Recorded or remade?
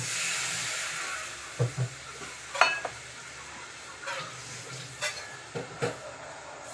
recorded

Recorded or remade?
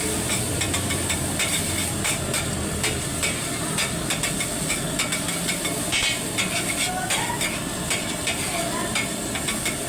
recorded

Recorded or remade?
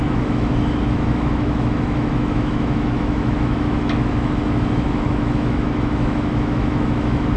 remade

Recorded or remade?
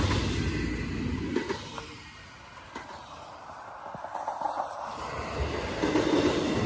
recorded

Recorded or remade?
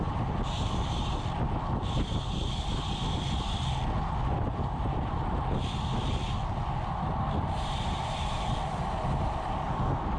recorded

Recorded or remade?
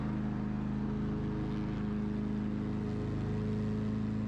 recorded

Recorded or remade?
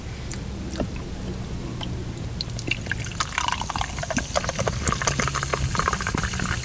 recorded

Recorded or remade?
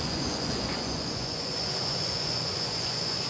remade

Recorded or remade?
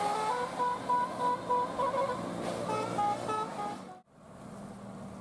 recorded